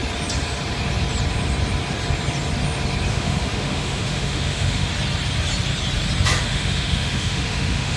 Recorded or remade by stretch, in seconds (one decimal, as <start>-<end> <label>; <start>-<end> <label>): 0.0-3.1 recorded; 3.1-4.9 remade; 4.9-6.4 recorded; 6.4-8.0 remade